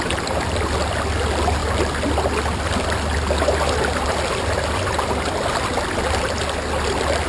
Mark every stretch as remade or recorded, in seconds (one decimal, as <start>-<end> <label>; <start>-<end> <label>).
0.0-7.3 recorded